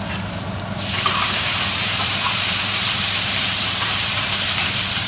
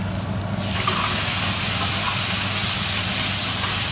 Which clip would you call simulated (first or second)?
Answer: first